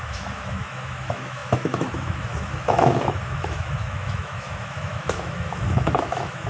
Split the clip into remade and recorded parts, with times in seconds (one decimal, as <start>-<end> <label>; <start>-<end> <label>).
0.0-6.5 remade

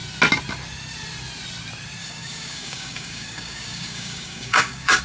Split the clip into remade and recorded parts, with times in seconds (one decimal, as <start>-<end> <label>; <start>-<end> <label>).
0.0-2.0 recorded; 2.0-5.0 remade

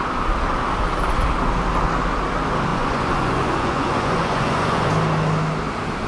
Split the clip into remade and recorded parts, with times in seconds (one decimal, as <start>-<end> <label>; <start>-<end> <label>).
0.0-2.7 recorded; 2.7-4.9 remade; 4.9-6.1 recorded

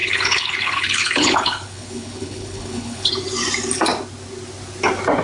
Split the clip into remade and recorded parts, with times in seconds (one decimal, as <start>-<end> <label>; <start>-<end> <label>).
0.0-3.1 remade; 3.1-5.2 recorded

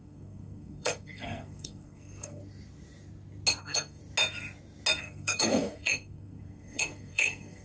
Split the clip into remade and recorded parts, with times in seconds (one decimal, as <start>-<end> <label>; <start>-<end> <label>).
0.0-2.4 remade; 2.4-3.6 recorded; 3.6-4.0 remade; 4.0-5.0 recorded; 5.0-7.6 remade